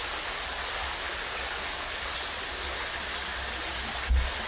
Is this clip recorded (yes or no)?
yes